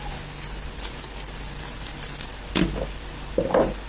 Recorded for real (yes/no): yes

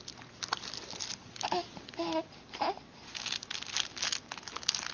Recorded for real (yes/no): yes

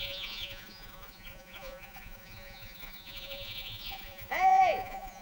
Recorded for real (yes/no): no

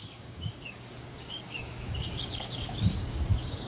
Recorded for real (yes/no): no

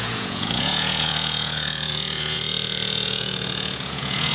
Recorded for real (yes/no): no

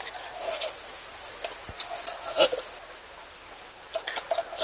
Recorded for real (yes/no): yes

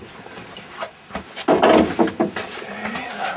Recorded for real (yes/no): yes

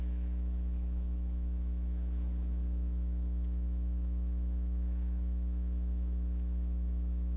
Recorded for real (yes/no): no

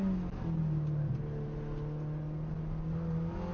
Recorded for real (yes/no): yes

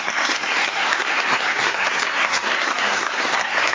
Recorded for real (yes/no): no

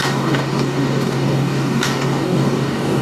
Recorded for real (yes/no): no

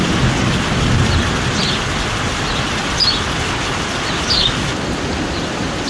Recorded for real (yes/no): yes